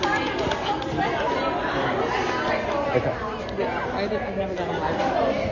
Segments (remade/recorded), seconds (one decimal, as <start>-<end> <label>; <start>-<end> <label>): 0.0-5.5 recorded